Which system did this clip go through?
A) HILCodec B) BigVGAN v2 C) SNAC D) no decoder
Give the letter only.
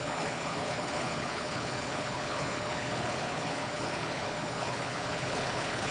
A